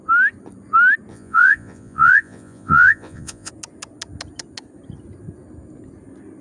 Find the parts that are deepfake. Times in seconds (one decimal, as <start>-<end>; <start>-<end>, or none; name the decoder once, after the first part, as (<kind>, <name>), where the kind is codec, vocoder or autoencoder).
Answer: 1.1-3.5 (vocoder, Vocos)